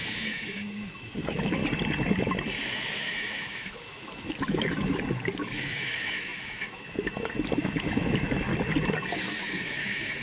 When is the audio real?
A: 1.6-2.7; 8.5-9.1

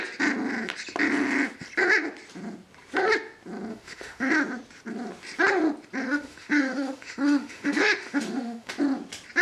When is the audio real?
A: 0.0-3.7; 4.3-6.0; 8.7-9.4

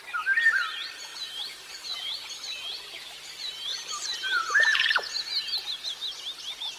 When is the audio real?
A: 0.0-6.8

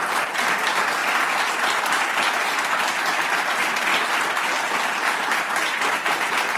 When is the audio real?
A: 0.0-6.6

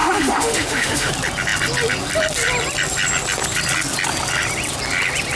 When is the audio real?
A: 1.1-5.4